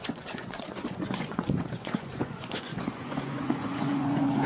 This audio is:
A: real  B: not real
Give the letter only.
B